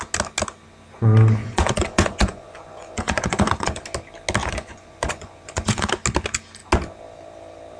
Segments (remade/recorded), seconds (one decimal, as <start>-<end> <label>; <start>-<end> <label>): 0.0-1.4 recorded; 1.4-3.8 remade; 3.8-4.4 recorded; 4.4-5.9 remade; 5.9-7.8 recorded